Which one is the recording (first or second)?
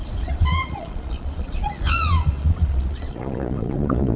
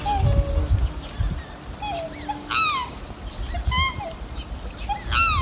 second